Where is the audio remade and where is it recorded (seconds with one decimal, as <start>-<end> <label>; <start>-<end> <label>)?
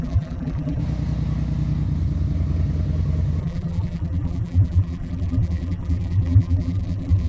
0.0-0.8 remade; 0.8-3.4 recorded; 3.4-7.3 remade